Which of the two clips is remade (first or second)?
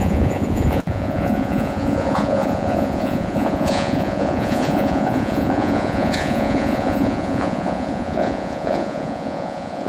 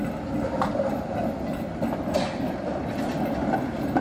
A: first